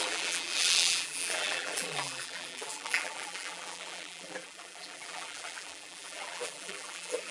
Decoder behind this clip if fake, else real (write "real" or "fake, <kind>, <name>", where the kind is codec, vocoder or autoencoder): fake, vocoder, BigVGAN v2